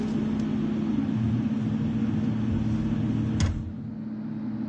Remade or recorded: recorded